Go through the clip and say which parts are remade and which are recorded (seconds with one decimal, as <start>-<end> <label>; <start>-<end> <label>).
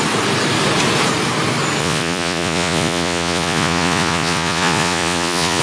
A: 0.0-1.8 recorded; 1.8-5.6 remade